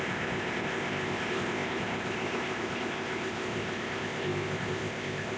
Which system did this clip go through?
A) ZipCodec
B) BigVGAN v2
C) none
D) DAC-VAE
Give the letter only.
A